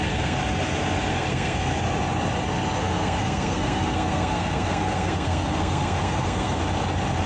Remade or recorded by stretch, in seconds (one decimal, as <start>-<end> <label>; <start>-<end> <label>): 0.0-0.4 remade; 0.4-1.1 recorded; 1.1-1.7 remade; 1.7-2.8 recorded; 2.8-6.6 remade; 6.6-7.3 recorded